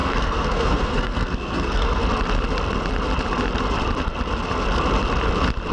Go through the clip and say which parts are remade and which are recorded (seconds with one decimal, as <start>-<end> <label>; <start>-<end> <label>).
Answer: 0.0-2.0 remade; 2.0-5.7 recorded